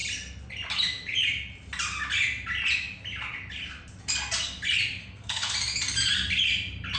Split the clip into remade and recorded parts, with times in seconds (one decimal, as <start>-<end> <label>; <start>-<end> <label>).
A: 0.0-5.0 recorded; 5.0-5.5 remade; 5.5-7.0 recorded